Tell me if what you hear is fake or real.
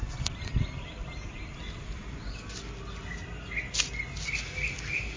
real